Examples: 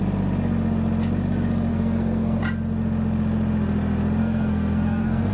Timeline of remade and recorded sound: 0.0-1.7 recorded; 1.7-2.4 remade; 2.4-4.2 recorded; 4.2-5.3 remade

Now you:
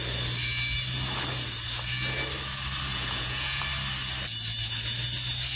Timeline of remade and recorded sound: 0.0-2.9 recorded; 2.9-3.6 remade; 3.6-5.6 recorded

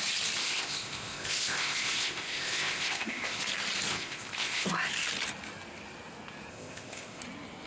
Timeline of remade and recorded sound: 0.0-0.4 recorded; 0.4-3.4 remade; 3.4-3.9 recorded; 3.9-4.7 remade; 4.7-6.5 recorded; 6.5-7.2 remade; 7.2-7.7 recorded

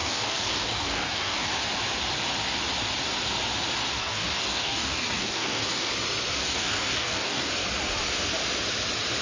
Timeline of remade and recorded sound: 0.0-1.5 remade; 1.5-4.0 recorded; 4.0-5.9 remade; 5.9-6.4 recorded; 6.4-7.5 remade; 7.5-9.2 recorded

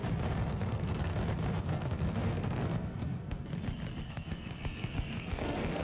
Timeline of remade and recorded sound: 0.0-0.5 recorded; 0.5-1.1 remade; 1.1-1.7 recorded; 1.7-3.5 remade; 3.5-4.0 recorded; 4.0-5.8 remade

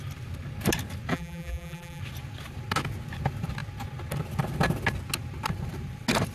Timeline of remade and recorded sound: 0.0-1.1 recorded; 1.1-2.0 remade; 2.0-6.3 recorded